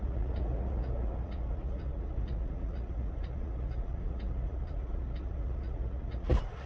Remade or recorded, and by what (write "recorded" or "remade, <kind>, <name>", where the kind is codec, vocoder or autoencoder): remade, vocoder, Vocos